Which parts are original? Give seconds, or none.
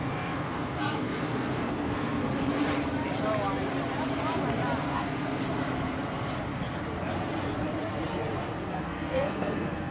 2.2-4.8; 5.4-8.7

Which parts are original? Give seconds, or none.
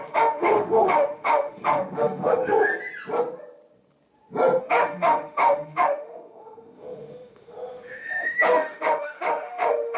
2.7-4.6